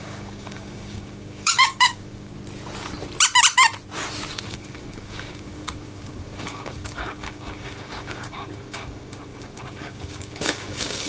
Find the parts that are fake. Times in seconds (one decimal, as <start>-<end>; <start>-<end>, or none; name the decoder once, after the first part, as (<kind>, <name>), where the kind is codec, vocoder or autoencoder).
0.0-2.3 (codec, DAC); 4.3-11.1